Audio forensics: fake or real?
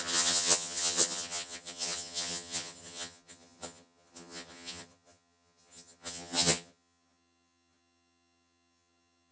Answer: fake